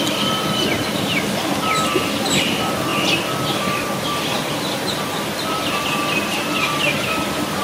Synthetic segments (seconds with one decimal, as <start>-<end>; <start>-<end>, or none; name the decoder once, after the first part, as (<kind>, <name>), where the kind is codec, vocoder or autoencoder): none

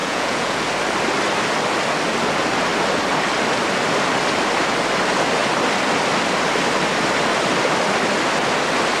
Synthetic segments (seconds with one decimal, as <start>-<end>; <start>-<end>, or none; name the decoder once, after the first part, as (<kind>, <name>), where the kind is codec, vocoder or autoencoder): 0.0-0.6 (vocoder, Vocos)

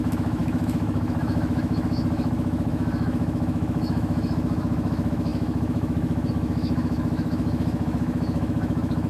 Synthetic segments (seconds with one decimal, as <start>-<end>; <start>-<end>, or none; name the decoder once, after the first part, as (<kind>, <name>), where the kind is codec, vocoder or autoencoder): 0.0-9.1 (autoencoder, DAC-VAE)

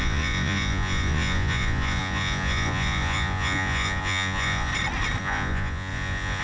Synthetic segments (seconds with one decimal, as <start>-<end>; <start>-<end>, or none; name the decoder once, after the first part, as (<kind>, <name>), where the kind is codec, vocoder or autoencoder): 0.0-4.7 (vocoder, Vocos); 5.2-6.4

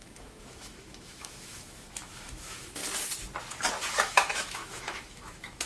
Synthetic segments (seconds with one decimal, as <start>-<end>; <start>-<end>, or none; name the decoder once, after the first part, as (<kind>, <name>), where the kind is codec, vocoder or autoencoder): 0.0-2.8 (autoencoder, DAC-VAE); 3.9-5.7

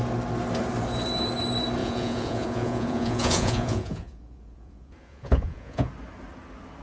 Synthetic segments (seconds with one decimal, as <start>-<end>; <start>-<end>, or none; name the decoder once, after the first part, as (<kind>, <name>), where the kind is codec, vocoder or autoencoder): 1.8-5.9 (vocoder, Vocos)

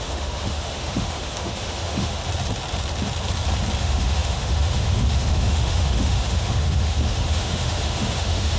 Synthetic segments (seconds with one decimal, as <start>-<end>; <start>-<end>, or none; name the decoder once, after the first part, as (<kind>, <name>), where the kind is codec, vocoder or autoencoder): 0.0-2.2 (autoencoder, DAC-VAE); 3.8-8.6

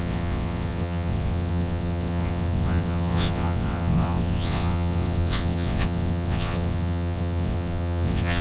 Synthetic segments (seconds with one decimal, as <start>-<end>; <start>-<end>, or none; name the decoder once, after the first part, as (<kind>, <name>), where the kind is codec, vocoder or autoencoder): 0.0-8.4 (vocoder, WaveNeXt)